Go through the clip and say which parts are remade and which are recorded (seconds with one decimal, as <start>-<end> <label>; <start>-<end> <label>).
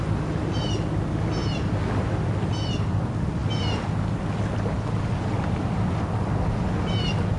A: 0.0-7.4 recorded